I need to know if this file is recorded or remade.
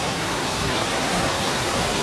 remade